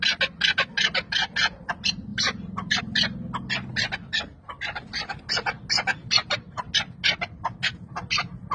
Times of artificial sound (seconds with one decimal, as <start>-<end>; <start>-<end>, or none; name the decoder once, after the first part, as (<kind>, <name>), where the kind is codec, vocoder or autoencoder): 2.1-2.8 (vocoder, BigVGAN v2); 3.7-5.1; 5.9-6.5